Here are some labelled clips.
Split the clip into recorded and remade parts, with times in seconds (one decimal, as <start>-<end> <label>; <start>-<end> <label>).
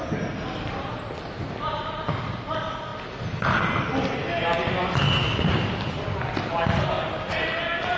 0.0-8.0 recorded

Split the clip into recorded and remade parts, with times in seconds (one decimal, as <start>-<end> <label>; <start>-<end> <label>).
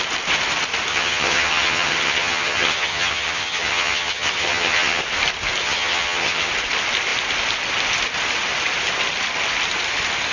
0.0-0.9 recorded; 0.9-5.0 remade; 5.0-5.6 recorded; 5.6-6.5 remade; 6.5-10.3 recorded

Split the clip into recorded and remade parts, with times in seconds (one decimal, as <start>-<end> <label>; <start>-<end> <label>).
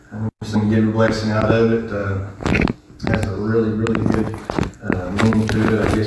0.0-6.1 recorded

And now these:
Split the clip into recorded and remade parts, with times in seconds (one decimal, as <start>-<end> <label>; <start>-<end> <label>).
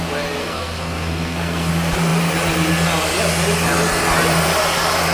0.0-0.4 recorded; 0.4-1.7 remade; 1.7-5.1 recorded